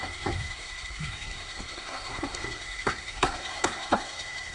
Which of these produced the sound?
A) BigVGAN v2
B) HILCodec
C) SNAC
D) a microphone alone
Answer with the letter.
C